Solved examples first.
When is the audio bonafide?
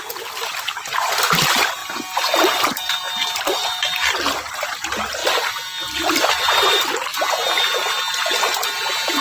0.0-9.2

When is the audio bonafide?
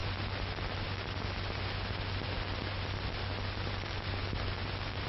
0.0-5.1